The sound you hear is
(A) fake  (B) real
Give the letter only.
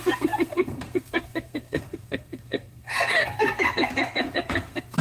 A